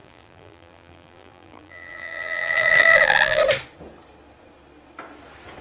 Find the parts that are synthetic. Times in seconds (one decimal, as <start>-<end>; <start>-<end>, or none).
0.0-3.4